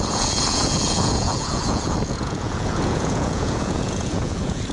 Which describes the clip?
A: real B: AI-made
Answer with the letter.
B